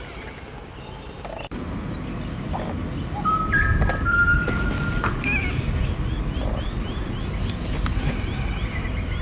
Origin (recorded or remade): recorded